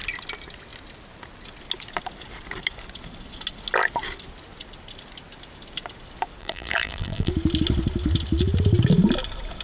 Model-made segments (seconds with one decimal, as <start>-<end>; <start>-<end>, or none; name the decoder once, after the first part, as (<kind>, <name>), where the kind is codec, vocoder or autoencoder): 6.4-7.3 (vocoder, BigVGAN v2)